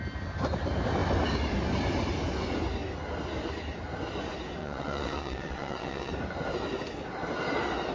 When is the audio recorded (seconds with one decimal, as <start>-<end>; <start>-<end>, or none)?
0.0-4.6; 6.1-7.9